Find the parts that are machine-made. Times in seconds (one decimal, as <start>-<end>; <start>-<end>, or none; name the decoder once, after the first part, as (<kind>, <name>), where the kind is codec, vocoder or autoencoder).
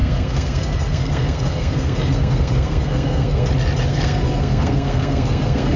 0.0-3.5 (codec, SNAC); 3.9-5.8